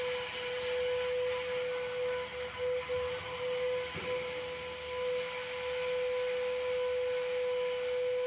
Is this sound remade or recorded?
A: recorded